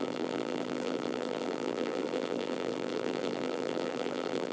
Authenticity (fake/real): fake